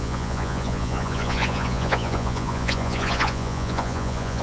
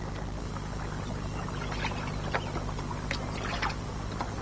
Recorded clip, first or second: second